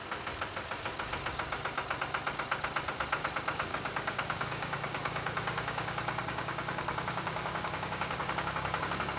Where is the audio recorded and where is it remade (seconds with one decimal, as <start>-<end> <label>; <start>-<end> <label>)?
0.0-3.7 recorded; 3.7-9.2 remade